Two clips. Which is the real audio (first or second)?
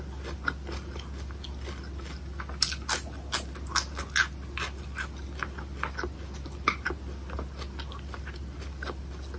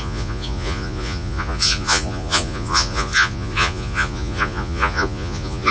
first